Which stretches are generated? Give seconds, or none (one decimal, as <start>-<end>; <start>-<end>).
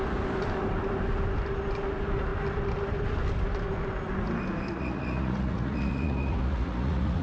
4.7-7.2